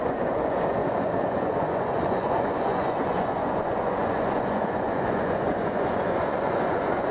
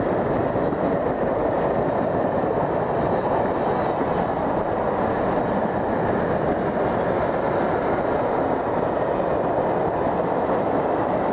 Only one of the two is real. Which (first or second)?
second